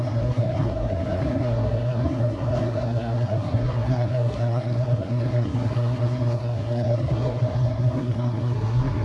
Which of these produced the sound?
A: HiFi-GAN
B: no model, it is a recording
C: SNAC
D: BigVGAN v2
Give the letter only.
C